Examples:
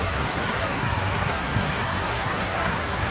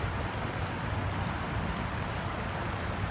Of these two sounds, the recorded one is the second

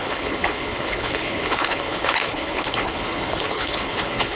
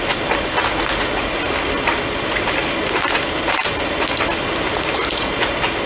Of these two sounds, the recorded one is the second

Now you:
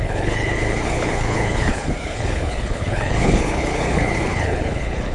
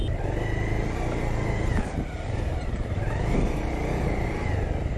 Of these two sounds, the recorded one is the second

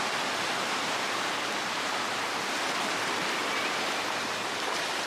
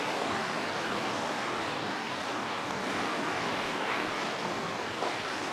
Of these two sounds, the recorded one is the first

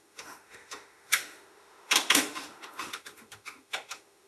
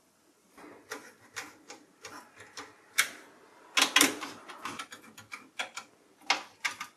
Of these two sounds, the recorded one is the second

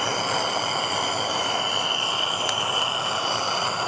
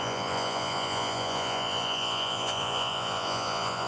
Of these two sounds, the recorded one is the first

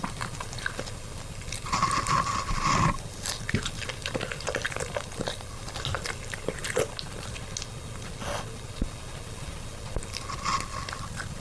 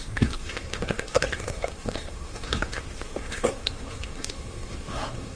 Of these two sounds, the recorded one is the first